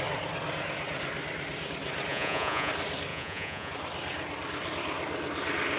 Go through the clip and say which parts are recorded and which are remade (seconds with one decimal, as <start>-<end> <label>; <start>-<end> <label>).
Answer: 0.0-2.1 recorded; 2.1-2.7 remade; 2.7-3.1 recorded; 3.1-3.7 remade; 3.7-5.8 recorded

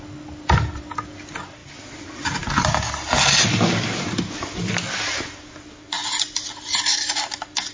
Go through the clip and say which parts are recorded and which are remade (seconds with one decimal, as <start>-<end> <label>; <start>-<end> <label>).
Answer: 0.0-7.7 recorded